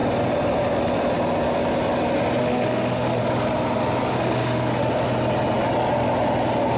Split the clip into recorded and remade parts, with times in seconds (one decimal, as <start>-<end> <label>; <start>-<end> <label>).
0.0-2.4 recorded; 2.4-3.2 remade; 3.2-4.1 recorded; 4.1-4.9 remade; 4.9-6.8 recorded